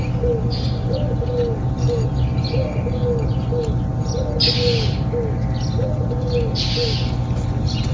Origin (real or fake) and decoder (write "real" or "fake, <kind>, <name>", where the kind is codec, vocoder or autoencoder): real